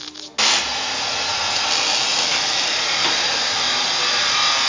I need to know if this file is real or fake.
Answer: real